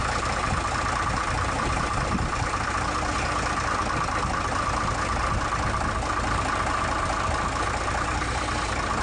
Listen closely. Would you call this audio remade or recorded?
recorded